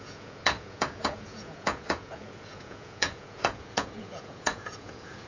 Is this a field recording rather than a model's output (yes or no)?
no